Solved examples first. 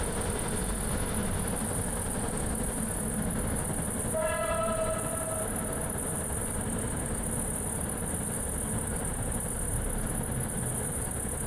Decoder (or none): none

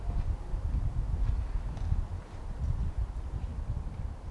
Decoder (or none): none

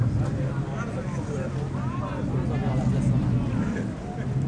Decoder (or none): none